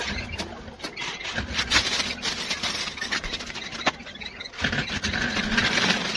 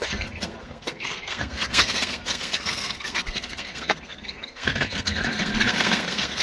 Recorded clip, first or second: first